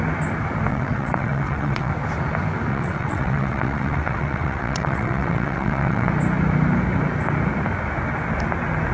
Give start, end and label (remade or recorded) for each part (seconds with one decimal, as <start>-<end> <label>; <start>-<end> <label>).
0.0-0.7 recorded; 0.7-1.9 remade; 1.9-2.7 recorded; 2.7-6.1 remade; 6.1-8.9 recorded